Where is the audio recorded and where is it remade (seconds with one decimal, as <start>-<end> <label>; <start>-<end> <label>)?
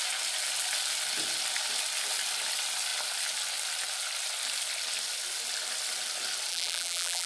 0.0-6.5 recorded; 6.5-7.3 remade